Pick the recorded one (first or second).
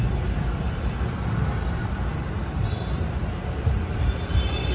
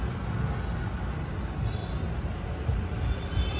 second